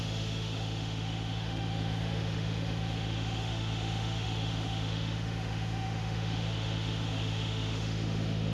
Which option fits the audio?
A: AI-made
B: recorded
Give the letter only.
A